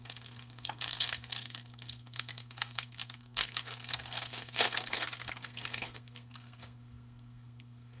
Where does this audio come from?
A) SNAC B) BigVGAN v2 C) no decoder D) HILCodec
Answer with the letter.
A